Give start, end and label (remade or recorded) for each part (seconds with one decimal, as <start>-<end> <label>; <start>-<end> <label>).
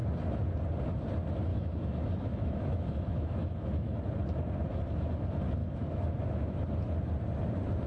0.0-1.5 recorded; 1.5-4.0 remade; 4.0-5.6 recorded; 5.6-6.7 remade; 6.7-7.9 recorded